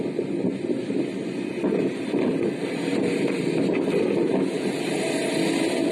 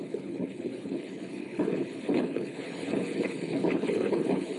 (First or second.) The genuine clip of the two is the first